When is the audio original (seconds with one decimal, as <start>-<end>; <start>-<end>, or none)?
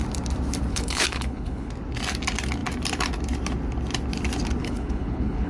0.0-0.7; 1.7-4.6